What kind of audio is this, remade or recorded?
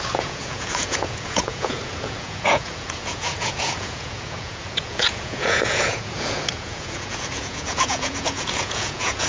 remade